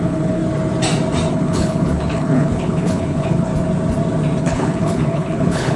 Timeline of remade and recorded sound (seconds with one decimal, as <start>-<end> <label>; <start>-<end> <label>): 0.0-0.4 remade; 0.4-1.3 recorded; 1.3-3.5 remade; 3.5-4.4 recorded; 4.4-5.8 remade